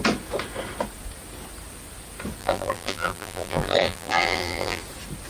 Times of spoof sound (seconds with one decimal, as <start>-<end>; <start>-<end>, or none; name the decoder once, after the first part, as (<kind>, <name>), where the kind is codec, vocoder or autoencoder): 2.4-4.8 (vocoder, BigVGAN v2)